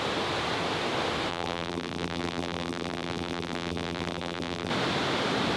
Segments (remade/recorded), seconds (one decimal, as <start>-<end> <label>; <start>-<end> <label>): 0.0-1.3 recorded; 1.3-4.7 remade; 4.7-5.6 recorded